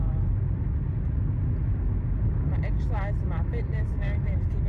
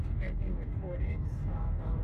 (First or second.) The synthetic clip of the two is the second